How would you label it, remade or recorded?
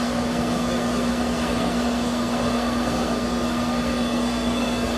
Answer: remade